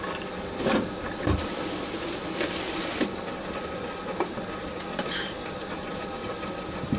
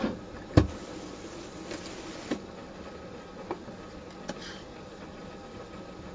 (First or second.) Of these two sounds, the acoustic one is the second